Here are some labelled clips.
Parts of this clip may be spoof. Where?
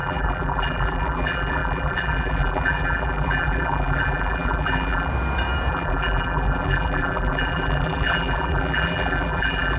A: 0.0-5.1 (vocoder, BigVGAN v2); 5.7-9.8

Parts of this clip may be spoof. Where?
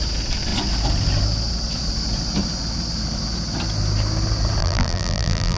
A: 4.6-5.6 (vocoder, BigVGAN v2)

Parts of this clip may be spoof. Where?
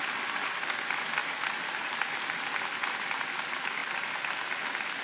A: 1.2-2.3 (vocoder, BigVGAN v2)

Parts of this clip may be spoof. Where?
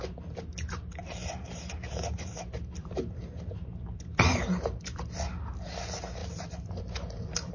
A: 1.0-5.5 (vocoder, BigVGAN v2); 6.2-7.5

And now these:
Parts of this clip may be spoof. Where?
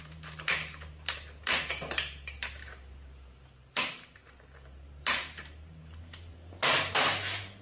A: 0.0-7.6 (vocoder, BigVGAN v2)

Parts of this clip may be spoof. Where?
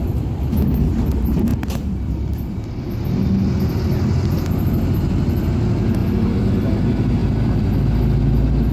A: 1.5-2.5 (vocoder, BigVGAN v2); 6.0-6.8; 7.2-8.2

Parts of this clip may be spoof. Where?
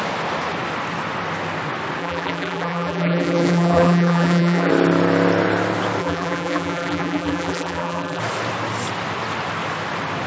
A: 2.0-4.7 (vocoder, BigVGAN v2); 6.0-8.2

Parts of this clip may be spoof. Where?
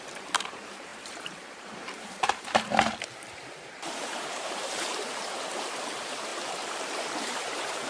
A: 0.0-6.3 (vocoder, BigVGAN v2); 6.8-7.9